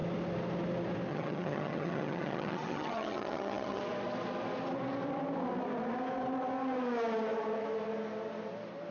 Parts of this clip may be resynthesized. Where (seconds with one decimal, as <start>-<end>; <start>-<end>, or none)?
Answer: 1.1-3.8